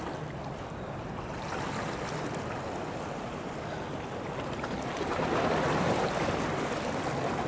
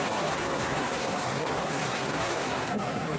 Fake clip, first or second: second